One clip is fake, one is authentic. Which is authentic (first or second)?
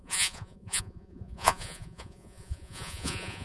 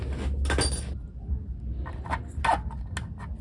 second